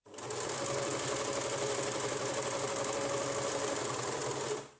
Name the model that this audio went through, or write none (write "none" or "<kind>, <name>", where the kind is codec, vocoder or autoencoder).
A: none